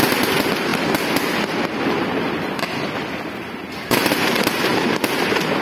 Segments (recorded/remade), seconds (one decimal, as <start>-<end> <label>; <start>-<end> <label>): 0.0-5.6 recorded